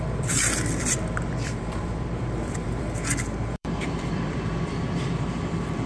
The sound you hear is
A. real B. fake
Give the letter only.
B